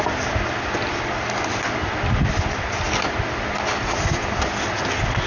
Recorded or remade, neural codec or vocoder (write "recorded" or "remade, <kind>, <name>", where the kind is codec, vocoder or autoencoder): recorded